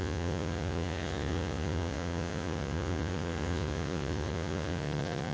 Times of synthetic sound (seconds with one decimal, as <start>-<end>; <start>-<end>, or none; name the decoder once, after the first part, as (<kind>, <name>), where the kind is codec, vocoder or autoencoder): 0.0-5.3 (vocoder, Vocos)